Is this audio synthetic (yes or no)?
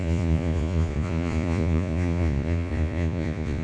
yes